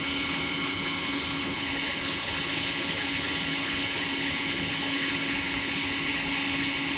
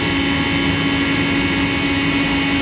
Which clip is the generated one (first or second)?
first